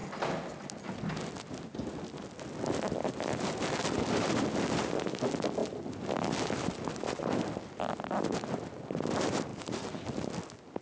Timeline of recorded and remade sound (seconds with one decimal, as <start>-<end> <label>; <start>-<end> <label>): 0.0-4.8 remade; 4.8-5.6 recorded; 5.6-7.9 remade; 7.9-9.5 recorded; 9.5-10.3 remade; 10.3-10.8 recorded